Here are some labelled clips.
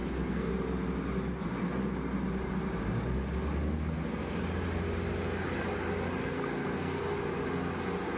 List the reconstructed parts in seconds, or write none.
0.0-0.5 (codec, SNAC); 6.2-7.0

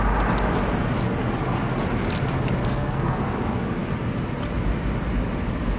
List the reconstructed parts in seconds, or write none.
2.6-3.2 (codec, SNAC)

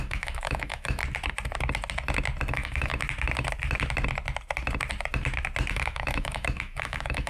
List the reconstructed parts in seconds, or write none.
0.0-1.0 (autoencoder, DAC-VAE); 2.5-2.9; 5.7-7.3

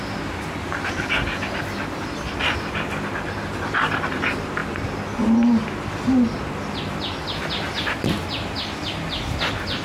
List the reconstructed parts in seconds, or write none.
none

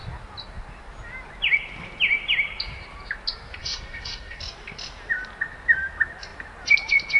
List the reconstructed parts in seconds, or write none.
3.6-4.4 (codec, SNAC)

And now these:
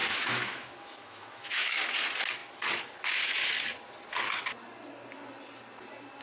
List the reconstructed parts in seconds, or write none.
0.0-1.8 (autoencoder, DAC-VAE)

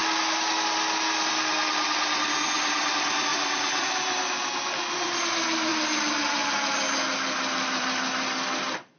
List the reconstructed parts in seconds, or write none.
3.3-5.1 (vocoder, BigVGAN v2)

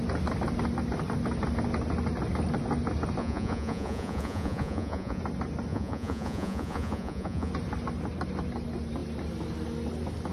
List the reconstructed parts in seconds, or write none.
3.2-5.2 (vocoder, Vocos); 5.7-7.5